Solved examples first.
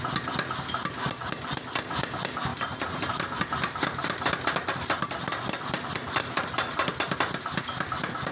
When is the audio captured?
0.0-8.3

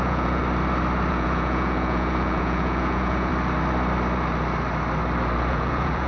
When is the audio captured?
0.4-1.1; 3.3-5.5

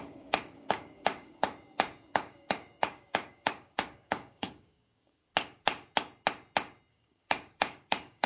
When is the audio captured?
5.2-6.9

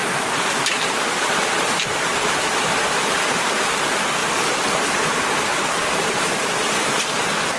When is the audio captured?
1.5-7.6